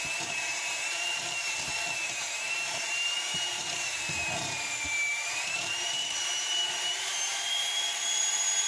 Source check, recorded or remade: remade